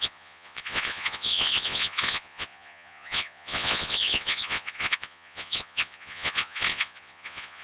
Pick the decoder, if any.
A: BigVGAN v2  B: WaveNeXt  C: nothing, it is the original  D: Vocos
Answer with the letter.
D